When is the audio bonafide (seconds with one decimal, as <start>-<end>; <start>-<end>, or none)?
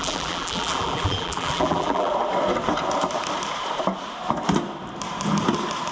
2.1-5.9